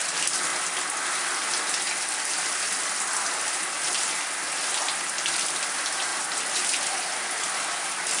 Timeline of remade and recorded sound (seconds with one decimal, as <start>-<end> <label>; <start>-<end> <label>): 0.0-8.2 recorded